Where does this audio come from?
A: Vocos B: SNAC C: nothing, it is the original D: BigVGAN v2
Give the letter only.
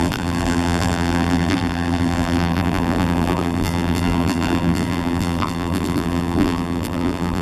D